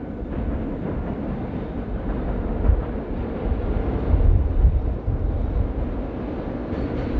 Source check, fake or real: real